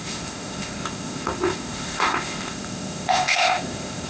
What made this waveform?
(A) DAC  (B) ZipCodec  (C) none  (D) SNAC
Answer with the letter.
B